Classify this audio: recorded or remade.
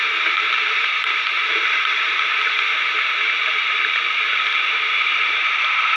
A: remade